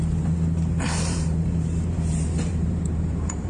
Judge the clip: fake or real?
fake